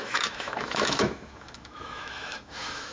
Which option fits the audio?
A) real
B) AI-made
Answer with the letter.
B